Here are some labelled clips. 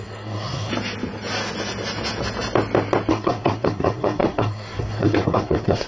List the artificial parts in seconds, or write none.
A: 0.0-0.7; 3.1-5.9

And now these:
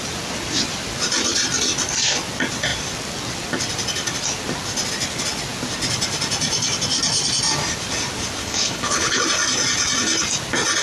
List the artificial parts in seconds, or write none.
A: 8.4-9.2

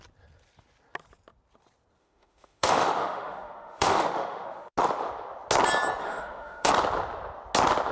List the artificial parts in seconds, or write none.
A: 2.0-4.7; 6.0-6.7

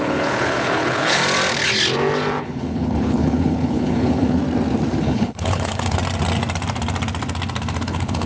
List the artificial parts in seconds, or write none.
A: 0.0-1.2; 2.4-4.4; 5.0-6.0; 7.8-8.3

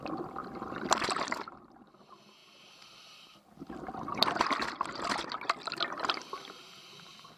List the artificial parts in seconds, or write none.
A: 0.0-2.4; 6.6-7.4

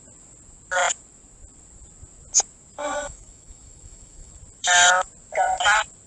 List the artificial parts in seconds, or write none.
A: 2.8-4.4

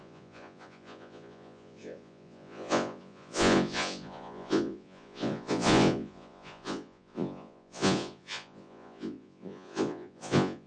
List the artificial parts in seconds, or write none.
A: 0.0-10.7